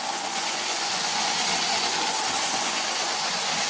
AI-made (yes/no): yes